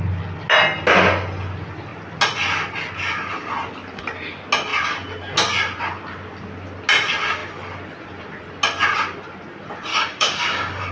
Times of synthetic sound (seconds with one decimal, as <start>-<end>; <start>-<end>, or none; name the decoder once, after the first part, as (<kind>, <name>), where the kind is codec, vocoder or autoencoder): 9.9-10.9 (codec, DAC)